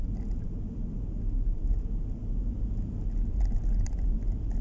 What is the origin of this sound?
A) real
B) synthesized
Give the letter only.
A